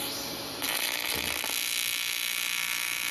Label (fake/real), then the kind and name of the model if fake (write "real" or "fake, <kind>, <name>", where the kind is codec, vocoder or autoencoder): real